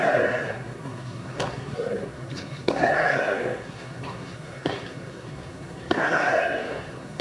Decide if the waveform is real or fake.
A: fake